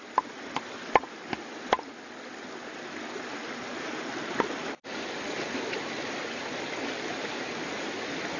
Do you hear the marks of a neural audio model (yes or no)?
no